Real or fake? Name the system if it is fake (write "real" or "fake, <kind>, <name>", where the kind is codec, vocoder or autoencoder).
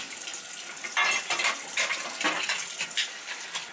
real